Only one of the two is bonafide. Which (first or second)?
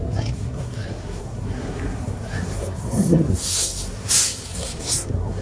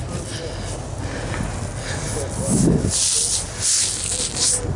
second